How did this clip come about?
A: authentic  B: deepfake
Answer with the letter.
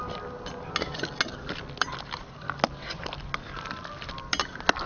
A